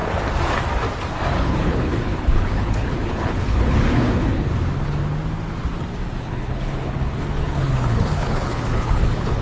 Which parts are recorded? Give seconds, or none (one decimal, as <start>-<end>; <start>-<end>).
0.0-1.4; 4.5-6.2